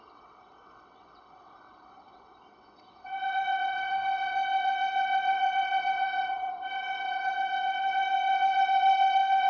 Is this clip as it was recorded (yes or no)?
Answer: no